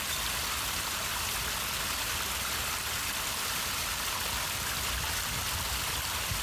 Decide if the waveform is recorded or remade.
recorded